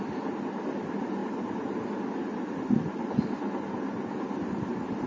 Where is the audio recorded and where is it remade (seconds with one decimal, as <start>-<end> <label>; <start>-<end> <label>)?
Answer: 0.0-5.1 recorded